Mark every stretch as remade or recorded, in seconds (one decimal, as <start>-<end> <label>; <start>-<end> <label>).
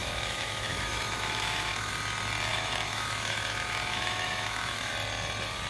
0.0-1.9 remade; 1.9-2.5 recorded; 2.5-4.9 remade; 4.9-5.7 recorded